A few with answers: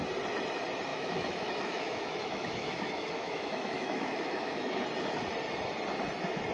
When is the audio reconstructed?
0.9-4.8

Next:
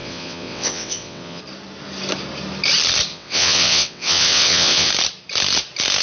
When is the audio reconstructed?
0.0-1.4; 3.1-4.9

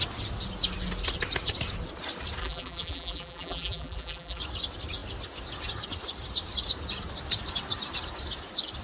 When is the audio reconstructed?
2.4-4.4

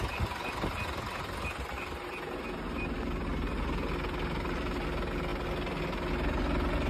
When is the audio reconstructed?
none

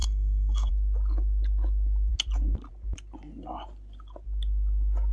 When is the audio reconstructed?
0.0-0.7

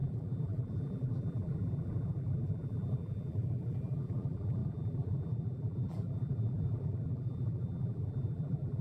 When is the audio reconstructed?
0.0-8.8

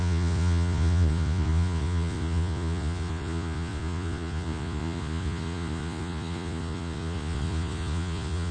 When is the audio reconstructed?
0.0-8.5